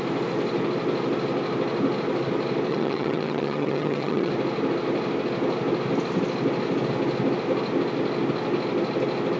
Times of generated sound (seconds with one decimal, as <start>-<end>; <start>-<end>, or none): 2.7-4.3